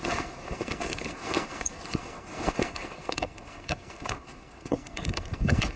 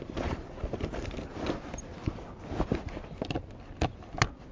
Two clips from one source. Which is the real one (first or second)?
second